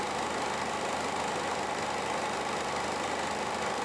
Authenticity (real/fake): fake